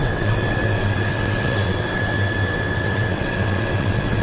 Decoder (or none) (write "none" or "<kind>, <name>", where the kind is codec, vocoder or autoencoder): vocoder, WaveNeXt